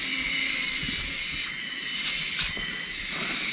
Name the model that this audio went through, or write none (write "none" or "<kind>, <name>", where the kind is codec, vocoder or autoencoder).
none